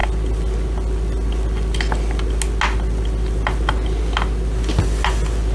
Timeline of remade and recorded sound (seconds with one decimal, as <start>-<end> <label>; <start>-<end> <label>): 0.0-5.5 recorded